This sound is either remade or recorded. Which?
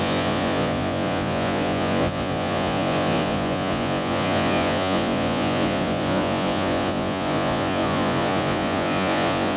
remade